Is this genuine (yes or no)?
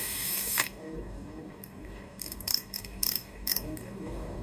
no